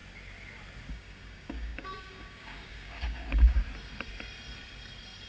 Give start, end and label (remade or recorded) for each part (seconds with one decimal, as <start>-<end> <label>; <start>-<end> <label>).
0.0-0.9 recorded; 0.9-3.6 remade; 3.6-5.3 recorded